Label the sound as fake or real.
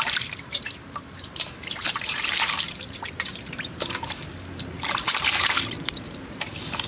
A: fake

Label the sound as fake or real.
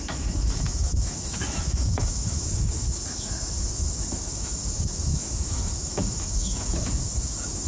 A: fake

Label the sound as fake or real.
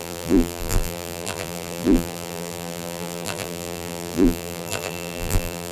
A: fake